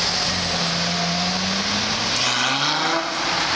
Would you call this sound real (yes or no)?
yes